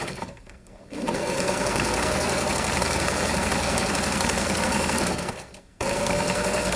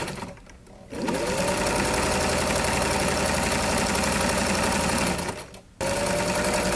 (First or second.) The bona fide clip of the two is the second